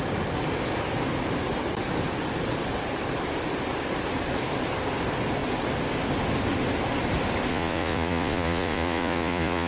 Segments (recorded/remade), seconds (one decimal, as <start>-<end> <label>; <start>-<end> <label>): 0.0-7.5 recorded; 7.5-9.7 remade